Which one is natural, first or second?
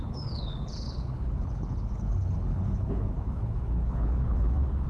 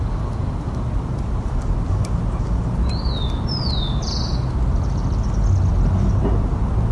second